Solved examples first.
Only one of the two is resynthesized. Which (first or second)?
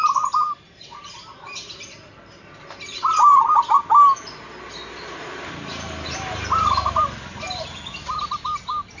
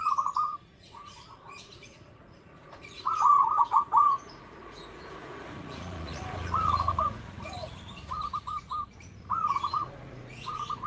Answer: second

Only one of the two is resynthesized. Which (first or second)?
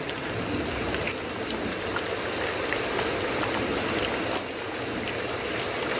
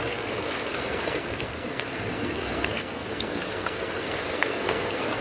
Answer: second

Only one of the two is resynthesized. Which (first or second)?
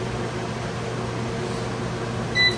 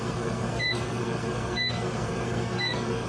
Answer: second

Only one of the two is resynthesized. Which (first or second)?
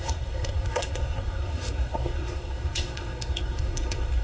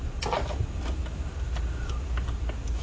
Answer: first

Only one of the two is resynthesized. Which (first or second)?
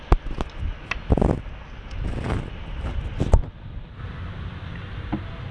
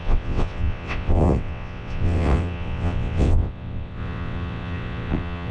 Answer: second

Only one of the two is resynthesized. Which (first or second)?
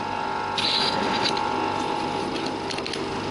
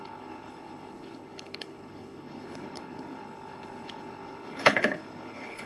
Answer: second